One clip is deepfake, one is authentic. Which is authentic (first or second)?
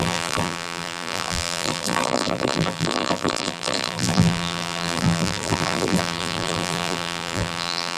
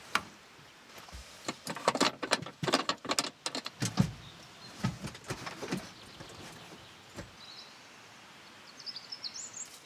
second